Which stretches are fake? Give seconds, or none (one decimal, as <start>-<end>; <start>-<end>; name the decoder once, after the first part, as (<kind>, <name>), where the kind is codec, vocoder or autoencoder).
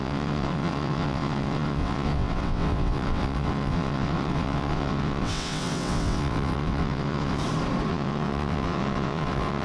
0.0-7.4 (vocoder, WaveNeXt); 7.9-9.6